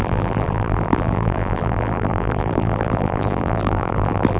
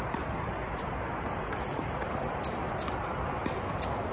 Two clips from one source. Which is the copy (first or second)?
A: first